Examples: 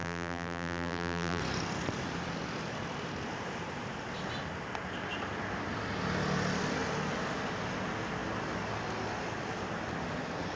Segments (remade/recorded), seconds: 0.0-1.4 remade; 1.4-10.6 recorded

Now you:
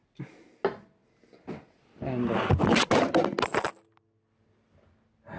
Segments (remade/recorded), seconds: 0.0-5.4 recorded

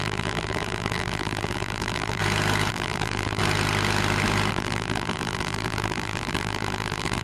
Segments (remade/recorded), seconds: 0.0-2.2 remade; 2.2-2.7 recorded; 2.7-3.4 remade; 3.4-4.5 recorded; 4.5-7.2 remade

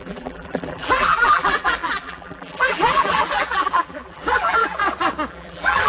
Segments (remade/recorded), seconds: 0.0-4.8 remade; 4.8-5.3 recorded; 5.3-5.9 remade

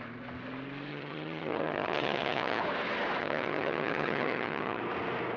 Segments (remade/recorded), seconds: 0.0-0.9 recorded; 0.9-2.6 remade; 2.6-3.2 recorded; 3.2-4.8 remade; 4.8-5.4 recorded

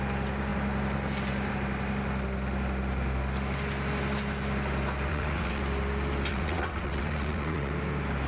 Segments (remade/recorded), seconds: 0.0-5.1 recorded; 5.1-5.6 remade; 5.6-6.3 recorded; 6.3-7.7 remade; 7.7-8.3 recorded